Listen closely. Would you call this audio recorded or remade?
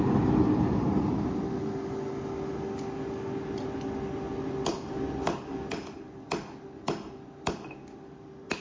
recorded